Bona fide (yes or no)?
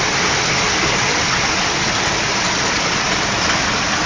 yes